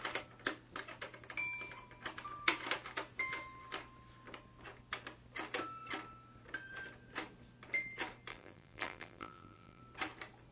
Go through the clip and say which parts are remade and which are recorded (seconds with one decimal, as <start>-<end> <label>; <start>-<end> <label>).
0.0-8.3 recorded; 8.3-9.8 remade; 9.8-10.5 recorded